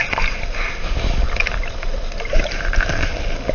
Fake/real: real